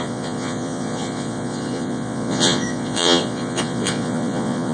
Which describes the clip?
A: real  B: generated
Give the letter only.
B